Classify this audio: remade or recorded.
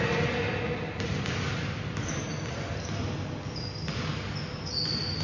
recorded